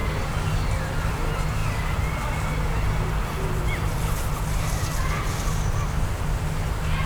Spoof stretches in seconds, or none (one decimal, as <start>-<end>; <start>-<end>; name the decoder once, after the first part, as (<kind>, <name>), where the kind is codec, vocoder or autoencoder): none